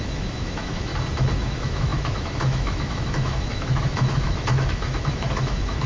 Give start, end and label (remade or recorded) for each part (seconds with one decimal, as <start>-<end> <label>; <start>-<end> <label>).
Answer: 0.0-0.9 remade; 0.9-1.4 recorded; 1.4-5.9 remade